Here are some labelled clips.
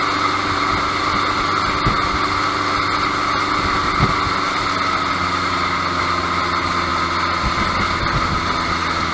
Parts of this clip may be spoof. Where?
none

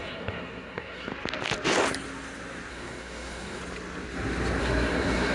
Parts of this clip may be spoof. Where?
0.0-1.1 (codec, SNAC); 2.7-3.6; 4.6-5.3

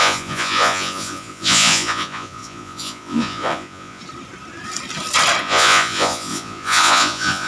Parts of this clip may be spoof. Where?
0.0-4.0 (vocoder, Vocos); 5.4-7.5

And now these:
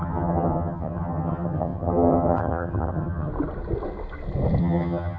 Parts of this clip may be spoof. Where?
0.0-3.3 (vocoder, HiFi-GAN); 4.6-5.2

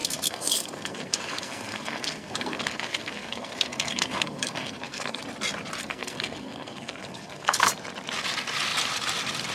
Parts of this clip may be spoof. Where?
0.0-5.2 (codec, SNAC); 5.8-7.7